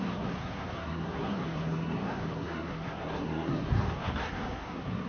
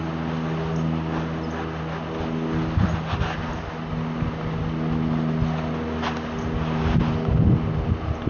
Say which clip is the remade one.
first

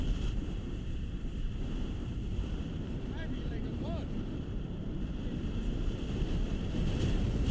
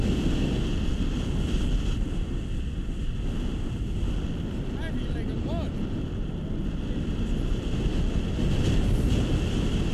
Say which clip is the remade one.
first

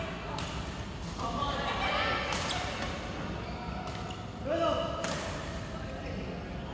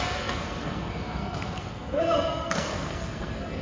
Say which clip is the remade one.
second